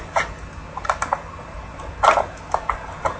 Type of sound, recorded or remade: recorded